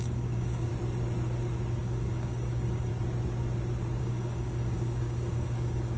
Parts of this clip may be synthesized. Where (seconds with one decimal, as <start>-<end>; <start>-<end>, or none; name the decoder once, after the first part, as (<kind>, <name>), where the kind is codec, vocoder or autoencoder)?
0.0-0.7 (codec, DAC); 1.8-2.9; 4.0-6.0